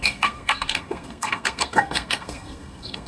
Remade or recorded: remade